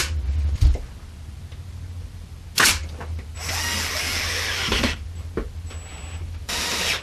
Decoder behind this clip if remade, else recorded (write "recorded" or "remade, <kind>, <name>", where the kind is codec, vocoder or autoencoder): recorded